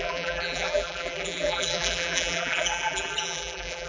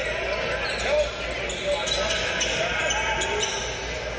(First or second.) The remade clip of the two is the first